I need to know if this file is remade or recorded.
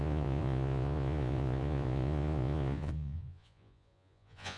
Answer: remade